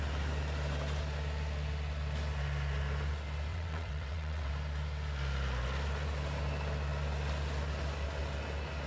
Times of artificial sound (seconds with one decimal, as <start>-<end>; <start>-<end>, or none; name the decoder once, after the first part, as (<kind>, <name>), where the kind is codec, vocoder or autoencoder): 3.5-4.5 (vocoder, WaveNeXt)